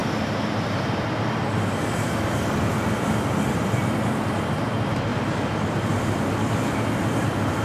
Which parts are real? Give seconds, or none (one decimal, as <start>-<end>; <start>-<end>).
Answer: 0.0-7.6